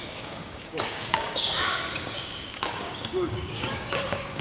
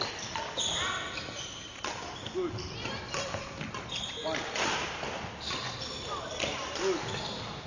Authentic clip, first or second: second